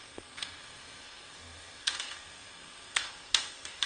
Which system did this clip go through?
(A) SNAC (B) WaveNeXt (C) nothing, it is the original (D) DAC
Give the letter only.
A